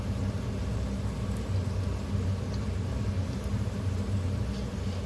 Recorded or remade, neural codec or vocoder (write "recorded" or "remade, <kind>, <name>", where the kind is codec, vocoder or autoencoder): recorded